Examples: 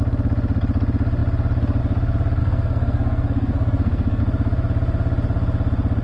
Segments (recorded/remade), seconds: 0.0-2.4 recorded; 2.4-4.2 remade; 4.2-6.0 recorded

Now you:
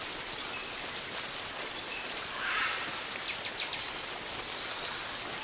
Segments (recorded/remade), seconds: 0.0-5.4 recorded

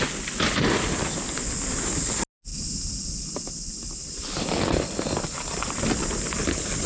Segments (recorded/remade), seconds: 0.0-2.5 recorded; 2.5-4.8 remade; 4.8-6.9 recorded

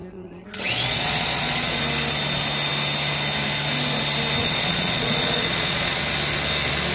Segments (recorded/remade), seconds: 0.0-1.8 remade; 1.8-4.4 recorded; 4.4-6.0 remade; 6.0-6.9 recorded

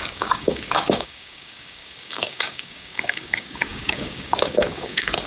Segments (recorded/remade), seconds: 0.0-5.3 remade

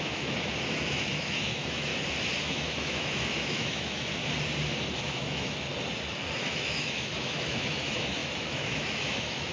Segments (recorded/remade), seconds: 0.0-1.9 remade; 1.9-2.4 recorded; 2.4-4.2 remade; 4.2-4.9 recorded; 4.9-5.7 remade; 5.7-6.4 recorded; 6.4-9.5 remade

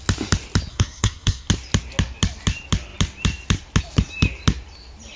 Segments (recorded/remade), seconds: 0.0-0.7 recorded; 0.7-1.5 remade; 1.5-5.2 recorded

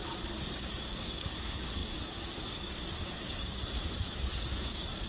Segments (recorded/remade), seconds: 0.0-0.6 recorded; 0.6-5.1 remade